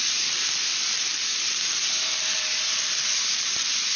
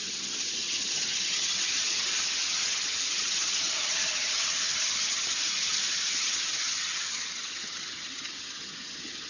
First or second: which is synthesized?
second